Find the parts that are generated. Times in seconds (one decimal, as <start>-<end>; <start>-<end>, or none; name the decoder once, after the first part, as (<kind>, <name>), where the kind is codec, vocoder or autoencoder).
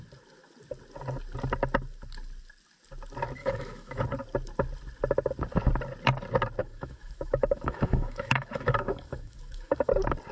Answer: 3.4-4.0 (autoencoder, DAC-VAE); 6.6-9.9